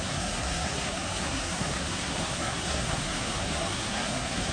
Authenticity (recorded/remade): remade